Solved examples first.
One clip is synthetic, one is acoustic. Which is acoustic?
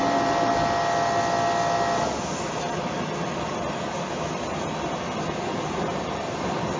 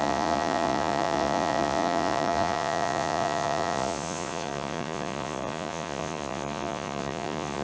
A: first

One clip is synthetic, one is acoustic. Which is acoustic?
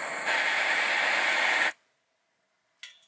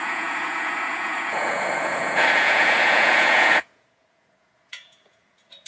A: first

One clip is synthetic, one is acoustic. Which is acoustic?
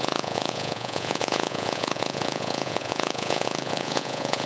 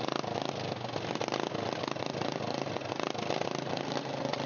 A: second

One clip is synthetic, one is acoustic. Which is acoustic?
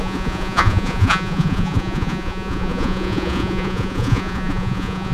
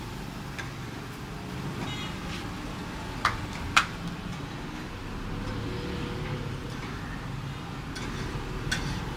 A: second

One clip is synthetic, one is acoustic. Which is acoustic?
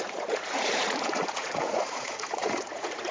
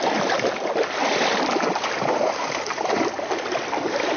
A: second